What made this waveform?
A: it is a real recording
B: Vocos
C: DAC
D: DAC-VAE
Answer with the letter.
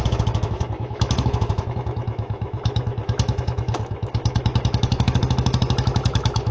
D